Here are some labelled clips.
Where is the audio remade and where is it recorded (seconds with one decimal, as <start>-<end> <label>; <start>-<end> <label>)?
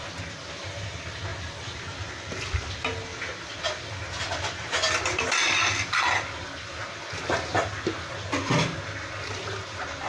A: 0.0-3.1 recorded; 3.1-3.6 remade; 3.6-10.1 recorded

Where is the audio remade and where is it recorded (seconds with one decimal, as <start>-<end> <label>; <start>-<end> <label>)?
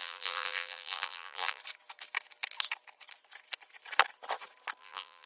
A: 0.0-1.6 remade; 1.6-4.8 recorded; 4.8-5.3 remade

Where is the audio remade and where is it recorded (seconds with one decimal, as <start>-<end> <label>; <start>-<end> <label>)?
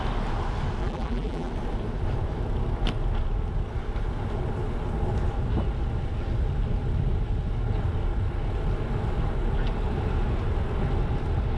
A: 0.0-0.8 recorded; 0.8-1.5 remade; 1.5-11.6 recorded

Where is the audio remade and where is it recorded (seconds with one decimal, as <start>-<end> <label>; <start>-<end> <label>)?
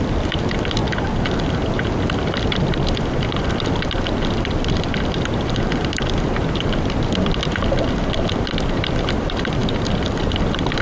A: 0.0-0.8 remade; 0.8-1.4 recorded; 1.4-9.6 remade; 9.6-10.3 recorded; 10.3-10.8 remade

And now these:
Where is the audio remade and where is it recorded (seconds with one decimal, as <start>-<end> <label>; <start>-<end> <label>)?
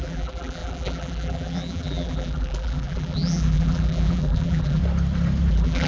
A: 0.0-4.8 remade; 4.8-5.5 recorded; 5.5-5.9 remade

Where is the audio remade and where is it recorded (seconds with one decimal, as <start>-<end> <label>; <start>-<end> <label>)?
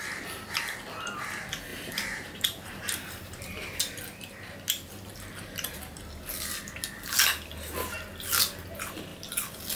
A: 0.0-1.7 recorded; 1.7-3.8 remade; 3.8-9.8 recorded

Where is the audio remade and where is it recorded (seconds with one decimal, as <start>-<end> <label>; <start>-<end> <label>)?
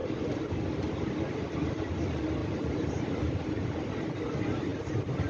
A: 0.0-2.4 recorded; 2.4-3.9 remade; 3.9-5.3 recorded